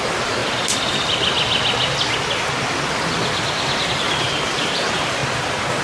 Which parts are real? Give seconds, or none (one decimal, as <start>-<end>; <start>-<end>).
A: 0.4-3.9; 5.2-5.8